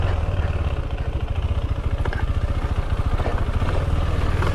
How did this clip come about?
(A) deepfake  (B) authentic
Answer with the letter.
B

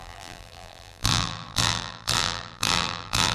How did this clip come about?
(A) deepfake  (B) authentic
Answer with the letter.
A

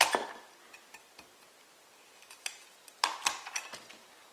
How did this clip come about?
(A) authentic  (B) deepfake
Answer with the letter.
A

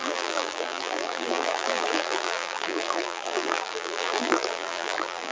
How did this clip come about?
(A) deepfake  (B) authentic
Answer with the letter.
A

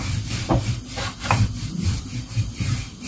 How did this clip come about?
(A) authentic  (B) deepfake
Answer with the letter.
B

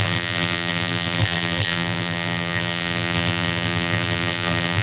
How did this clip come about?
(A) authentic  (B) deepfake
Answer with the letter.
B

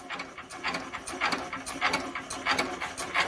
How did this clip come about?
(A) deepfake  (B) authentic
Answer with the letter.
B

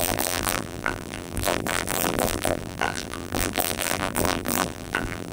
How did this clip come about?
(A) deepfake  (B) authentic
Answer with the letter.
A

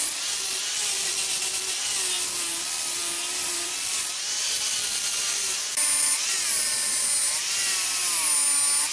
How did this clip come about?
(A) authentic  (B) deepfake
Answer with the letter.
A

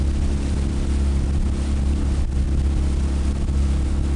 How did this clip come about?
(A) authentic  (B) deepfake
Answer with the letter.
A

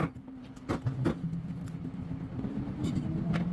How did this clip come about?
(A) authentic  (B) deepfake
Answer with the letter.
B